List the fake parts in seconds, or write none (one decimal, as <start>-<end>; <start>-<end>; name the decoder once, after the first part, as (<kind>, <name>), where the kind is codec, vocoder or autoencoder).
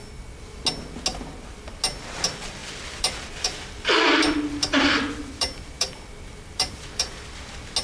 1.1-1.8 (vocoder, BigVGAN v2); 2.6-7.3